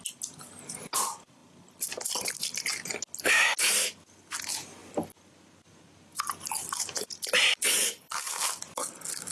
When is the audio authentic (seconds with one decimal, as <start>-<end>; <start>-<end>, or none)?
0.0-7.8; 8.4-9.3